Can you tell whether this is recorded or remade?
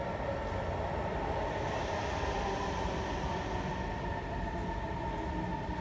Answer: recorded